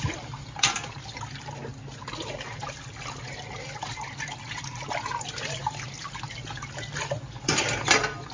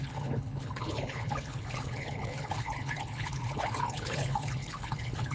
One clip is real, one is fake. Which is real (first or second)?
first